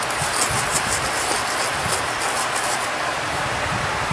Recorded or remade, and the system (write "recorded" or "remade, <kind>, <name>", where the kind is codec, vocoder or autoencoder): recorded